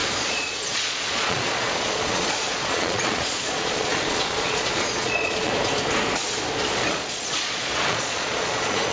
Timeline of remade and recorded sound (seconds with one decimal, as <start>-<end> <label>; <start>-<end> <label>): 0.0-5.5 remade; 5.5-6.9 recorded; 6.9-8.9 remade